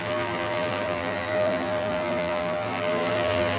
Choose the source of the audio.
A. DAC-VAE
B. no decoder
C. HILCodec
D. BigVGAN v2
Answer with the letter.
D